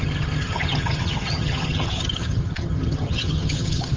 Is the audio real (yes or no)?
no